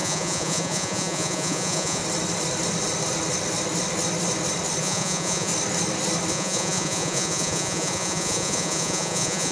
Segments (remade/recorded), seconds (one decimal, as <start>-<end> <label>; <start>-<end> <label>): 0.0-2.0 remade; 2.0-4.8 recorded; 4.8-5.5 remade; 5.5-6.3 recorded; 6.3-9.5 remade